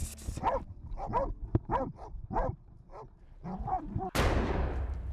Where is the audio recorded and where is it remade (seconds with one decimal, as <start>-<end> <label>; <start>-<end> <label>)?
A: 0.0-5.1 recorded